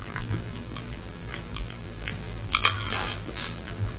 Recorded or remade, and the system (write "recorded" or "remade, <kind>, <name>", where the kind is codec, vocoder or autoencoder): remade, vocoder, BigVGAN v2